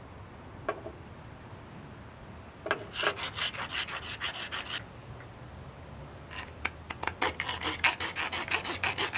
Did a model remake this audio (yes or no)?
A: no